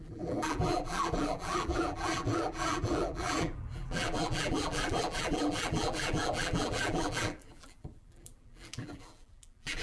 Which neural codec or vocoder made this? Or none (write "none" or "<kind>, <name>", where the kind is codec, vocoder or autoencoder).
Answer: vocoder, BigVGAN v2